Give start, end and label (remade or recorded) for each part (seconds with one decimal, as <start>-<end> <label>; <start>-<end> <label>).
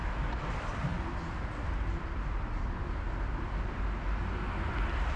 0.0-5.2 recorded